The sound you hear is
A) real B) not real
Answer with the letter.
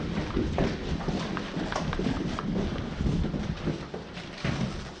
A